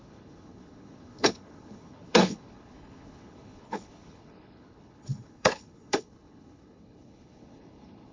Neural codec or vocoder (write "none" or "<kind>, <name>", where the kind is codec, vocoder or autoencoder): codec, HILCodec